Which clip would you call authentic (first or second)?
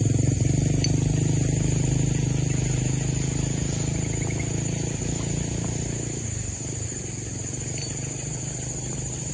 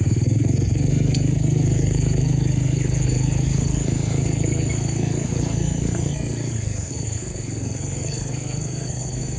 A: first